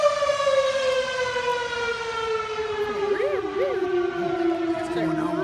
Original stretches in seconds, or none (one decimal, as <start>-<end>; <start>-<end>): 0.0-5.4